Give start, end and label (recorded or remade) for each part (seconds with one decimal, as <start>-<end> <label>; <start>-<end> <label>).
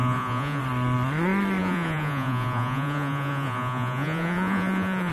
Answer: 0.0-0.6 remade; 0.6-1.6 recorded; 1.6-5.1 remade